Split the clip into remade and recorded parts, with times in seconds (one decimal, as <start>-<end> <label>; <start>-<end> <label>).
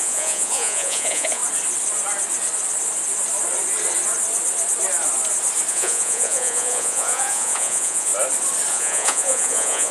0.0-1.4 remade; 1.4-5.7 recorded; 5.7-8.1 remade; 8.1-8.7 recorded; 8.7-9.9 remade